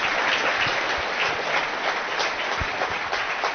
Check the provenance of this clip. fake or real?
real